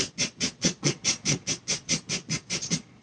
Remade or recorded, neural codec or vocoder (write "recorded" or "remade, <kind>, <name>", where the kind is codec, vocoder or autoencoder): remade, vocoder, Vocos